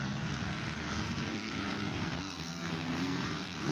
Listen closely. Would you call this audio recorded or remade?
remade